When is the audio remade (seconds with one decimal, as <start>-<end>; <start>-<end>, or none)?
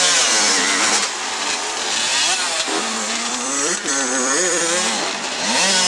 1.0-1.7; 2.1-5.9